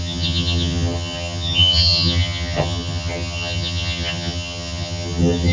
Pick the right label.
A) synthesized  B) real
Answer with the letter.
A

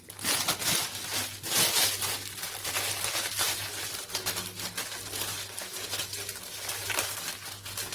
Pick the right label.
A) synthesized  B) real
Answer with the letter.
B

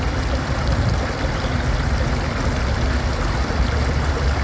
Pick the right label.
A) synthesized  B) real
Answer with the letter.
B